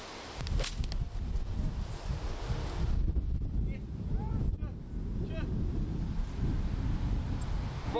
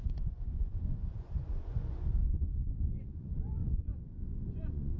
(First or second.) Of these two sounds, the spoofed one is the second